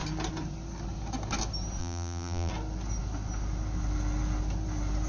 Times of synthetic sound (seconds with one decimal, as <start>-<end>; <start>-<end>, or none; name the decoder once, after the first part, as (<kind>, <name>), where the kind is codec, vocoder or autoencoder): 1.8-2.5 (vocoder, BigVGAN v2)